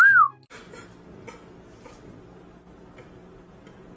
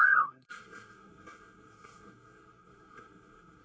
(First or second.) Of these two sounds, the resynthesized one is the second